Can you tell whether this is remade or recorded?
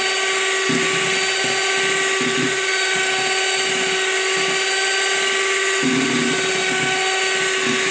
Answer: recorded